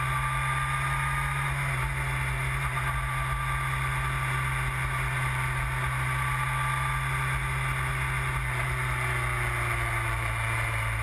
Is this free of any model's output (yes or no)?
yes